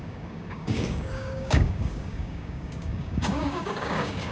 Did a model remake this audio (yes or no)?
yes